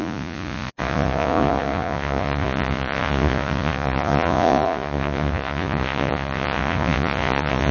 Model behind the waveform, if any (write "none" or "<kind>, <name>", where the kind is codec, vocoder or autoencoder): vocoder, Vocos